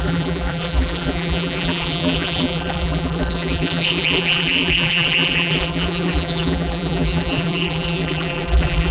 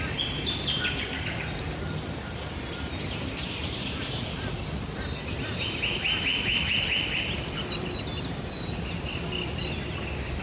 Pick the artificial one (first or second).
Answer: first